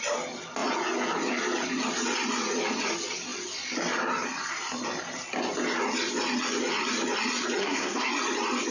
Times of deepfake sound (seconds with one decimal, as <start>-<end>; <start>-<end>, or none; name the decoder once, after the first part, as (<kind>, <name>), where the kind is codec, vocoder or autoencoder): 7.6-8.1 (codec, SNAC)